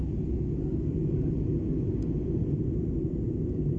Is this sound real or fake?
real